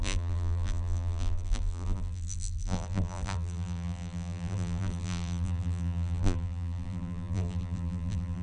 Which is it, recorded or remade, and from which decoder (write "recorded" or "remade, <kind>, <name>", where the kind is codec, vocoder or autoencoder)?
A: remade, vocoder, BigVGAN v2